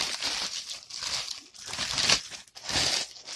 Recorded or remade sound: recorded